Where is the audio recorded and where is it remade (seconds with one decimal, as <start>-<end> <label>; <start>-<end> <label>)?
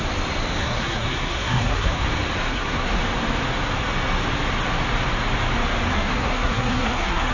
0.0-0.6 recorded; 0.6-2.0 remade; 2.0-2.5 recorded; 2.5-3.0 remade; 3.0-5.9 recorded; 5.9-7.3 remade